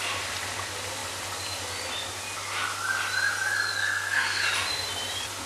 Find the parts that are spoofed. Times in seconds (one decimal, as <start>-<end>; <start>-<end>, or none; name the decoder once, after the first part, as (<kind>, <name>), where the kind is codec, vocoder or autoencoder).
3.8-4.4 (codec, SNAC)